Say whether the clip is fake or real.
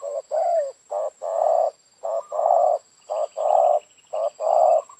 real